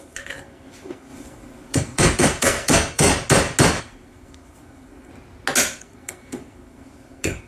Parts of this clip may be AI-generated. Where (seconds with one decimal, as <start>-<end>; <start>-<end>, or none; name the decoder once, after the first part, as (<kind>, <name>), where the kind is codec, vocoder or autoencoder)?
0.0-3.1 (codec, SNAC); 3.8-5.1; 5.8-7.5